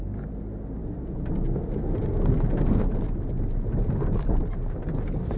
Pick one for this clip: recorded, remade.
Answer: recorded